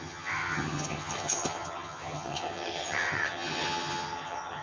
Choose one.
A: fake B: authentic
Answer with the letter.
A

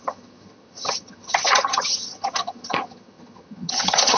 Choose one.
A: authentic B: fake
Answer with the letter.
B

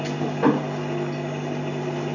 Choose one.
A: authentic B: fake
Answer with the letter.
A